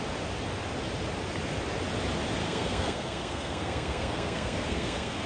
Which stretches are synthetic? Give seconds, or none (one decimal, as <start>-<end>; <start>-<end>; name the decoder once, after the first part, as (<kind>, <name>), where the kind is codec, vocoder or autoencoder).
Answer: 2.4-5.3 (codec, SNAC)